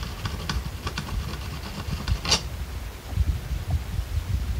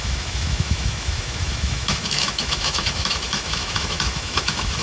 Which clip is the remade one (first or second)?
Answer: second